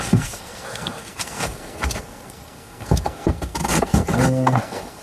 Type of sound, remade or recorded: remade